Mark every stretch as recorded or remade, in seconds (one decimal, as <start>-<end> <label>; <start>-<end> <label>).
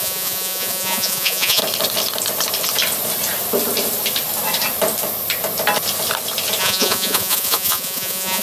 0.0-1.6 remade; 1.6-6.6 recorded; 6.6-8.4 remade